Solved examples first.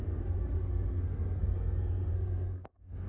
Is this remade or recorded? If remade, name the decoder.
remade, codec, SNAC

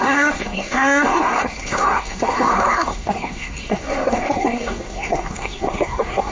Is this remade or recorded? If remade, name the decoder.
remade, codec, SNAC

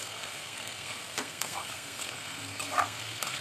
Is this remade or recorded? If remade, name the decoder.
remade, codec, SNAC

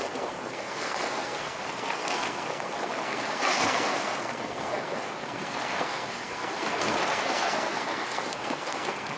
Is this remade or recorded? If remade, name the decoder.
remade, codec, SNAC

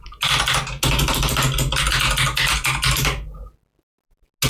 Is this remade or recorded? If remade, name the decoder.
recorded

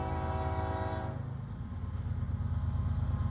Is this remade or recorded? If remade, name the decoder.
recorded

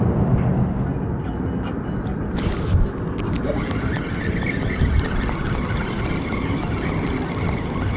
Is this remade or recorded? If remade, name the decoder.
recorded